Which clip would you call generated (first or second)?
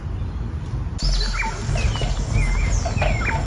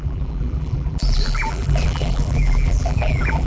second